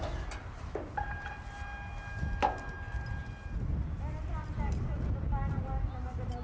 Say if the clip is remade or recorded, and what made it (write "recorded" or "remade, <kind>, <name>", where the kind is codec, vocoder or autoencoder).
recorded